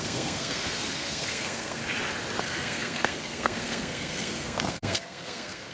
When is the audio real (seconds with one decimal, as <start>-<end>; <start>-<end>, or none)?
1.8-2.4